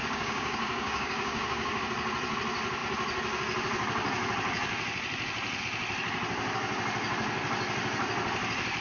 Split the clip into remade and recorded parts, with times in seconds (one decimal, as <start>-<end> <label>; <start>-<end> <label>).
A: 0.0-1.8 remade; 1.8-8.8 recorded